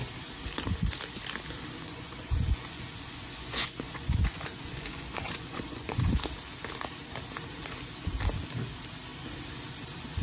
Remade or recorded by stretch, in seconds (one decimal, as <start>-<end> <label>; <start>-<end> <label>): 0.0-1.9 recorded; 1.9-6.1 remade; 6.1-10.2 recorded